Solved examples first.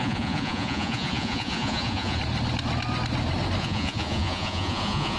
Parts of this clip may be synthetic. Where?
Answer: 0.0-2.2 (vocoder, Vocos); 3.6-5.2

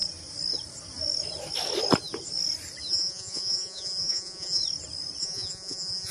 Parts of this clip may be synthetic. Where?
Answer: 2.9-4.6 (vocoder, Vocos); 5.2-6.1

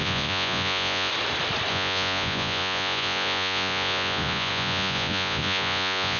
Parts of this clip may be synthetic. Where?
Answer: 0.0-1.1 (vocoder, Vocos); 1.7-6.2